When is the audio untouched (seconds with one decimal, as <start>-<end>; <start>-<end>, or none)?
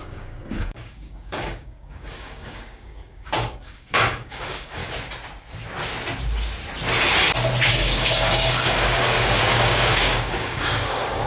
4.8-7.7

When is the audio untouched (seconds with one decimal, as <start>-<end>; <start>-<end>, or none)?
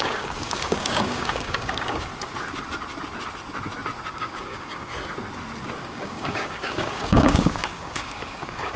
2.1-4.1; 4.9-5.8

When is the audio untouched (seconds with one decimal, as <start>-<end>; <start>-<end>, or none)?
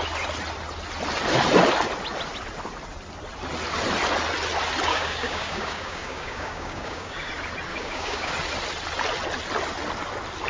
0.0-4.9; 7.3-7.7; 8.3-10.5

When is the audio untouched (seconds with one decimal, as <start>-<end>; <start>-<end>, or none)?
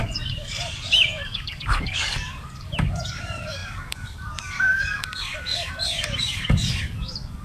none